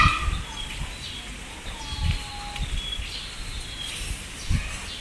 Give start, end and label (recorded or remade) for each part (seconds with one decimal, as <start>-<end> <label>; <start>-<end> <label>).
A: 0.0-5.0 recorded